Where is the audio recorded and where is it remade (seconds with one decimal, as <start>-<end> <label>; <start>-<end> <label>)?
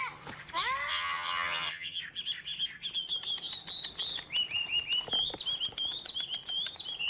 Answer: 0.0-0.9 recorded; 0.9-2.0 remade; 2.0-7.1 recorded